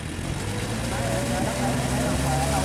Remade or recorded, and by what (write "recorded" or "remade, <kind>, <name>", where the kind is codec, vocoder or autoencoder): recorded